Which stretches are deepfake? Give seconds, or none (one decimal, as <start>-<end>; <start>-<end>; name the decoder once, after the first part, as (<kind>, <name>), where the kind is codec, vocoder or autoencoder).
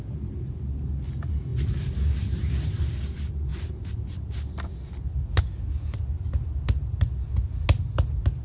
none